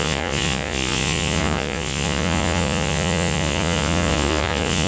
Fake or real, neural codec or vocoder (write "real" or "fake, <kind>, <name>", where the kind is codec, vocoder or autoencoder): fake, vocoder, Vocos